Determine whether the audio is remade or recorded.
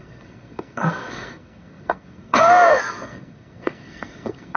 remade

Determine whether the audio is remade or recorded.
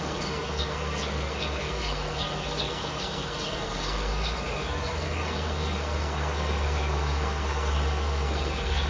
remade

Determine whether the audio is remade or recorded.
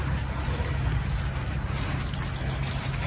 recorded